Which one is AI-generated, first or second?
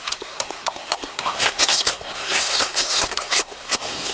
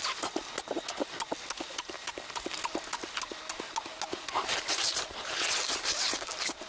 first